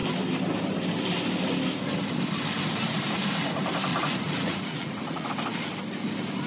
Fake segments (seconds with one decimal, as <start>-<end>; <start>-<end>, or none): 3.9-5.3